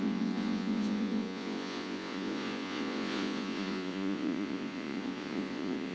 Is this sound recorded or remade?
remade